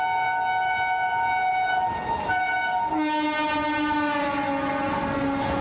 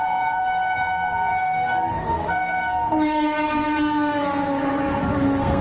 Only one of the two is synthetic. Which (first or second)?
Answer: second